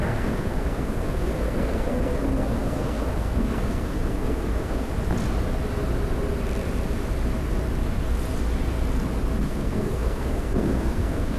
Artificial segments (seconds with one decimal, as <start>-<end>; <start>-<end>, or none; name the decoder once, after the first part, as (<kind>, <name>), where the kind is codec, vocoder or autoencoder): 0.0-4.9 (codec, SNAC); 9.4-11.4